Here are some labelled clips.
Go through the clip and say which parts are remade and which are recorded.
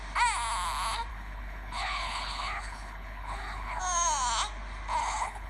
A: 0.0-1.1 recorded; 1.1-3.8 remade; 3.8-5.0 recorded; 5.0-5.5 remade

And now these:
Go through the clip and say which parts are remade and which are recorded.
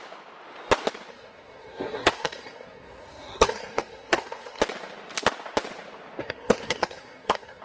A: 0.0-1.1 recorded; 1.1-4.6 remade; 4.6-6.2 recorded; 6.2-7.6 remade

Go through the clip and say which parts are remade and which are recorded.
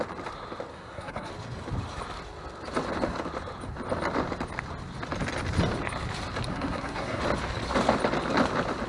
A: 0.0-0.7 recorded; 0.7-1.3 remade; 1.3-6.5 recorded; 6.5-7.2 remade; 7.2-8.9 recorded